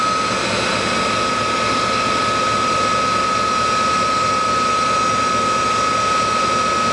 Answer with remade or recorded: recorded